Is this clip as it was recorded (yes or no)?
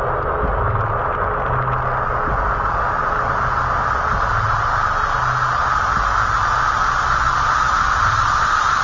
yes